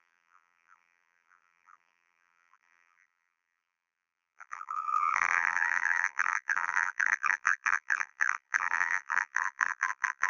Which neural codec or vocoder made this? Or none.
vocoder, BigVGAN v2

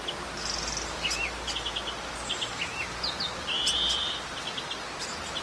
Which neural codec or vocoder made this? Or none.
none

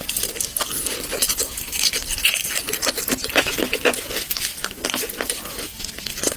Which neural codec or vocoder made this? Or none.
none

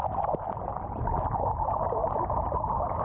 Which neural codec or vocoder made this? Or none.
none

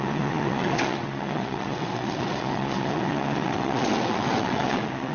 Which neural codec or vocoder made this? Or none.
vocoder, WaveNeXt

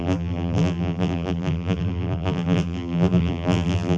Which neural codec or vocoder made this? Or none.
vocoder, BigVGAN v2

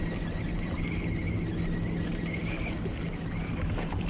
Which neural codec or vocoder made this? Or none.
none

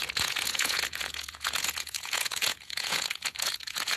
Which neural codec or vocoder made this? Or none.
vocoder, Vocos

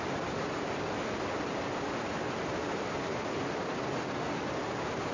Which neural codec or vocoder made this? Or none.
none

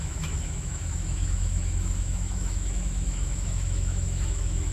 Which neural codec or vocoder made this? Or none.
autoencoder, DAC-VAE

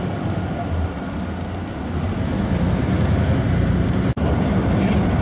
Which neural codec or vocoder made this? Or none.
none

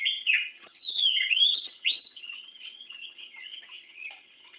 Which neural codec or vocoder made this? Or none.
vocoder, HiFi-GAN